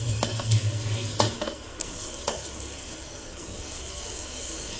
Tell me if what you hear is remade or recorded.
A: remade